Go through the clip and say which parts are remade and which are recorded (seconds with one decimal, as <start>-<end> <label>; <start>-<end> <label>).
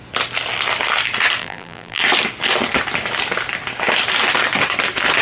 0.0-1.4 recorded; 1.4-2.0 remade; 2.0-5.2 recorded